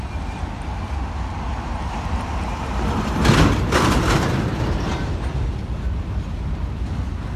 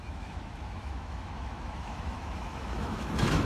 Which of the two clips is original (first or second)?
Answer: first